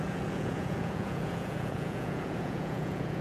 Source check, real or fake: fake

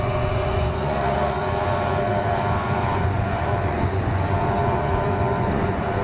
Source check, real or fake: fake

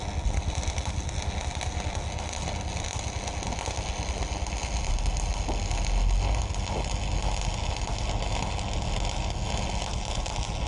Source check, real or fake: real